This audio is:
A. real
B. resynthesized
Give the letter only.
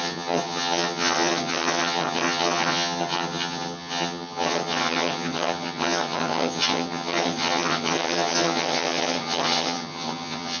B